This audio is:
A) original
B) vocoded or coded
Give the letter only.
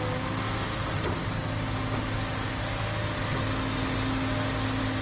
A